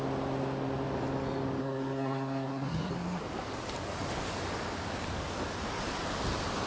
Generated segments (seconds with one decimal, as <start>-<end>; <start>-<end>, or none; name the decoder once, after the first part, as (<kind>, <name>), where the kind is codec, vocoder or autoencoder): 1.6-2.9 (codec, SNAC)